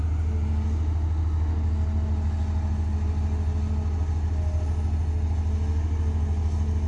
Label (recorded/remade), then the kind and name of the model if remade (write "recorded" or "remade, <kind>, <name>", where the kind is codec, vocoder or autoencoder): recorded